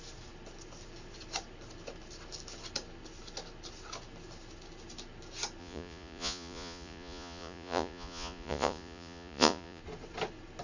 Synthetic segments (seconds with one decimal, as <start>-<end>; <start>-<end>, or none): 5.6-9.8